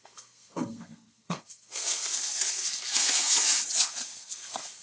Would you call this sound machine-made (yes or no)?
yes